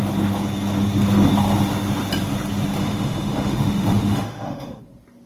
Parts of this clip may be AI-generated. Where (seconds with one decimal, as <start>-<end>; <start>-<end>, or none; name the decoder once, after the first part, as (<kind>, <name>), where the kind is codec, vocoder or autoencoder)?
2.8-4.8 (autoencoder, DAC-VAE)